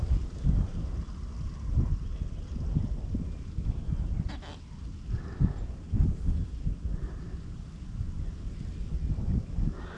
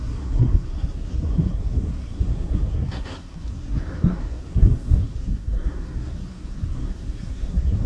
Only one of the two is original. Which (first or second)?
first